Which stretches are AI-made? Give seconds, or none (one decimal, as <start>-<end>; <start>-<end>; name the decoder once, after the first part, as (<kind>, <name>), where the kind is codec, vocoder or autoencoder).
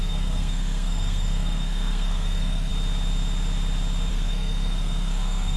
0.0-2.7 (codec, SNAC); 4.1-5.6